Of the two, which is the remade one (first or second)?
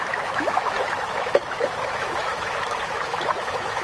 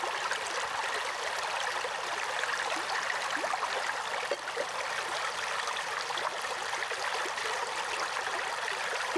first